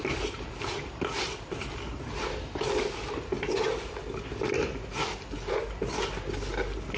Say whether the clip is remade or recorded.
recorded